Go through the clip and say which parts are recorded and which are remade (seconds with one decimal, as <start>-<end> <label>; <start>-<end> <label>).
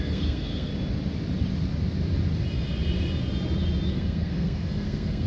0.0-0.7 remade; 0.7-3.9 recorded; 3.9-5.3 remade